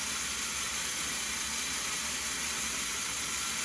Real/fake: real